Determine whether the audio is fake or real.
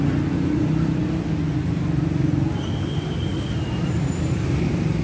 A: real